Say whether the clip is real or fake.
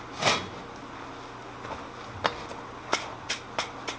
real